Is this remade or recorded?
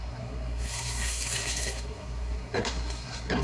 remade